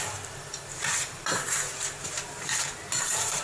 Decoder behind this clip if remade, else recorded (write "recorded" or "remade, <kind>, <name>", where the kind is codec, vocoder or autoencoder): remade, vocoder, BigVGAN v2